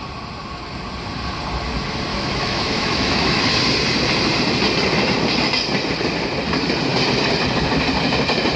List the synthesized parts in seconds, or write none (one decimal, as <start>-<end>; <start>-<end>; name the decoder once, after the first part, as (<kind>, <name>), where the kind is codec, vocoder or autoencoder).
2.1-3.4 (autoencoder, DAC-VAE)